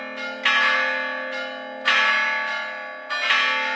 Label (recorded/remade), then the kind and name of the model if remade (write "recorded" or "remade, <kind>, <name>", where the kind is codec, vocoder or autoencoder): recorded